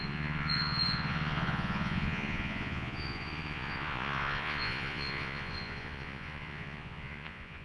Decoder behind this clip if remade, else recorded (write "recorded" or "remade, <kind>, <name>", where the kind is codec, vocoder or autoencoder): remade, vocoder, Vocos